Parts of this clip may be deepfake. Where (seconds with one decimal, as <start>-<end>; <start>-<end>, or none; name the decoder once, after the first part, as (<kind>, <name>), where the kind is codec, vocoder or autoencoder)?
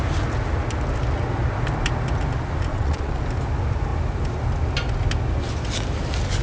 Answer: 2.7-3.2 (vocoder, WaveNeXt)